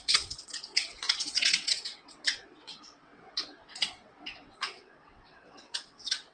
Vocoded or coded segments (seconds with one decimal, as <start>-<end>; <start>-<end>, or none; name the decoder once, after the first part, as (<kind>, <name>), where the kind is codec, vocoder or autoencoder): 0.0-6.3 (vocoder, WaveNeXt)